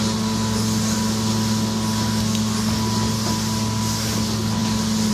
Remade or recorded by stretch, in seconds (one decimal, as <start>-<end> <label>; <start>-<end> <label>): 0.0-5.1 recorded